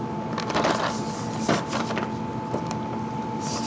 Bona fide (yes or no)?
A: yes